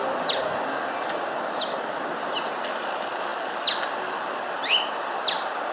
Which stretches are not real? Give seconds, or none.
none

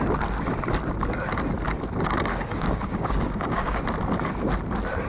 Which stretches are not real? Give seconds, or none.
2.3-3.8 (codec, DAC)

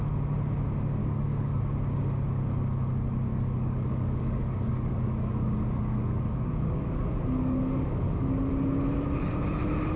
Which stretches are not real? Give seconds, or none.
1.0-1.6 (codec, DAC); 3.3-8.5

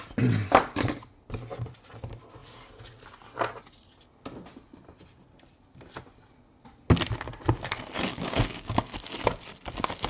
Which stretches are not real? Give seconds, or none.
8.1-8.8 (codec, DAC)

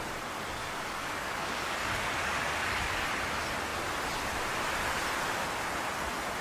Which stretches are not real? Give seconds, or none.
0.6-3.0 (codec, DAC)